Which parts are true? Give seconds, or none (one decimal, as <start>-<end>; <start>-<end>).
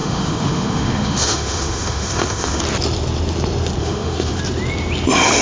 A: 2.6-3.8; 4.4-5.4